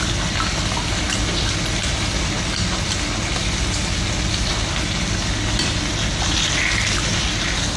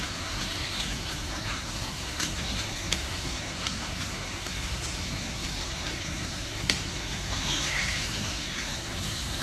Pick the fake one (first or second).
second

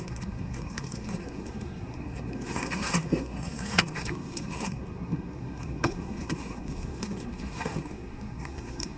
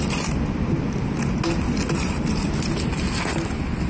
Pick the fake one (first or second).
first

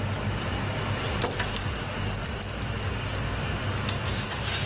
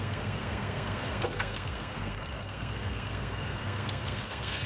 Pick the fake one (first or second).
second